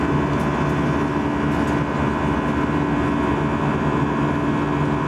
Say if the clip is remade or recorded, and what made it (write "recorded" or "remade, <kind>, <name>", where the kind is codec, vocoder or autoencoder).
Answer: recorded